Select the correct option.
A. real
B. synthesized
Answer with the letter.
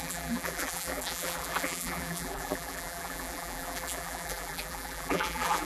B